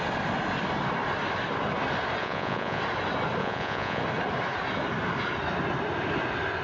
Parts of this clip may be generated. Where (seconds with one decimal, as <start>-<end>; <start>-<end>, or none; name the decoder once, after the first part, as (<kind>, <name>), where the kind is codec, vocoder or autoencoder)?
2.2-2.8 (vocoder, Vocos); 3.4-4.0